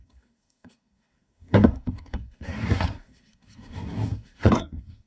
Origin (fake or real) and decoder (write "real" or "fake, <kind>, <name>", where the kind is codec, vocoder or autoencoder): fake, codec, SNAC